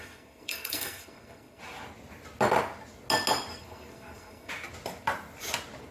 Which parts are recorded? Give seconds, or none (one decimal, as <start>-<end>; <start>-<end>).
1.6-3.5; 4.5-5.9

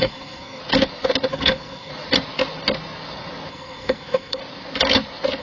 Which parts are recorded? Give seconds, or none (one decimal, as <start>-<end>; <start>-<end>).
0.6-1.3; 1.9-3.5; 4.4-5.4